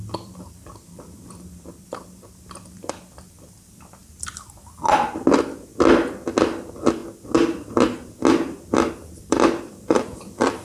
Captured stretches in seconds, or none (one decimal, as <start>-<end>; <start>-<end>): 4.0-6.4; 7.0-8.9